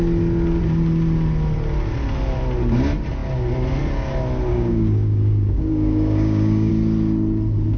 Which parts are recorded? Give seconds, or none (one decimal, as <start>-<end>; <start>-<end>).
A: 0.0-4.5; 6.7-7.8